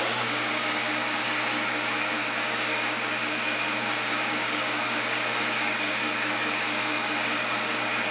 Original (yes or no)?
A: no